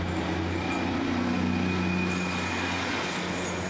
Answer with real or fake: real